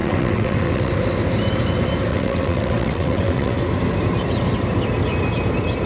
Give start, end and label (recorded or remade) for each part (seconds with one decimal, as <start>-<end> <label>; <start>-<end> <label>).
0.0-0.9 remade; 0.9-2.1 recorded; 2.1-3.6 remade; 3.6-5.9 recorded